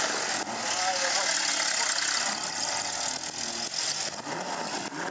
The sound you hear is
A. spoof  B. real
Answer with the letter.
B